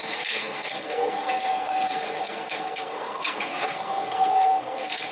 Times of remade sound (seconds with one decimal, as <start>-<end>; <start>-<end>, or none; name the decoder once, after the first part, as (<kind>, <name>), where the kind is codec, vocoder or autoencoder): 0.0-5.1 (codec, SNAC)